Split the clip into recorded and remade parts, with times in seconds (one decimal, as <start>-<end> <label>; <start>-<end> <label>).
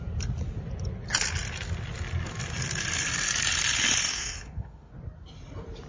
0.0-4.1 recorded; 4.1-4.9 remade; 4.9-5.9 recorded